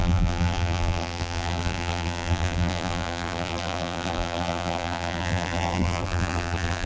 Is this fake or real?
fake